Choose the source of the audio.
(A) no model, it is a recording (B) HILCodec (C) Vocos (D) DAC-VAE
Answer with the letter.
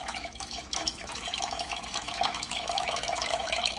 D